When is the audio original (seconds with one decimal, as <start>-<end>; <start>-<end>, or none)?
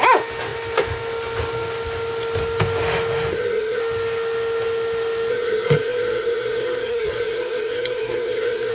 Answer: 0.0-3.3; 3.8-5.3